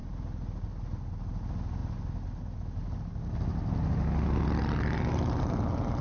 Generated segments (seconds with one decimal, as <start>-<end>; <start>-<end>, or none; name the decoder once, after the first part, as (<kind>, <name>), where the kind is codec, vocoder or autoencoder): none